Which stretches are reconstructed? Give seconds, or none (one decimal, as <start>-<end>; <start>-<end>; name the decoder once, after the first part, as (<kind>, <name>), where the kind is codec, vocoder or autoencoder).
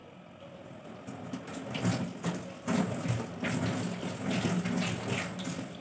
none